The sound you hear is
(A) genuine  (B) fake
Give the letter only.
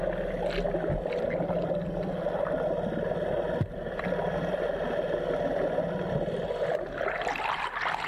A